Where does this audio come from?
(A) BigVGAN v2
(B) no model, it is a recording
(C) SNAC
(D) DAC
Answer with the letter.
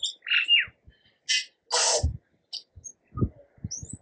B